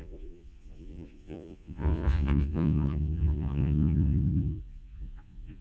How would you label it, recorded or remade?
remade